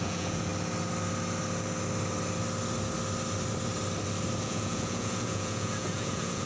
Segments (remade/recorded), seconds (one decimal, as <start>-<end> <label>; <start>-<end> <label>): 0.0-0.5 remade; 0.5-4.4 recorded; 4.4-6.5 remade